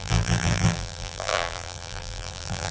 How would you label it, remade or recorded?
remade